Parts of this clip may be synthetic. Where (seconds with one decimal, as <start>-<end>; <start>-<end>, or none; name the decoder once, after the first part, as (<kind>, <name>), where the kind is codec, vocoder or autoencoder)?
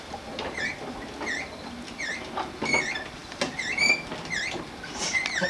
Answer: none